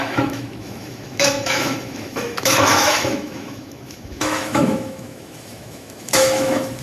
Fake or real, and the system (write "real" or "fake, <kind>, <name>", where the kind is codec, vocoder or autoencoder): fake, autoencoder, DAC-VAE